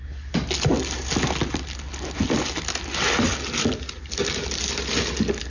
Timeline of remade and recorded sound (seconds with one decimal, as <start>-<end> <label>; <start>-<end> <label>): 0.0-5.5 recorded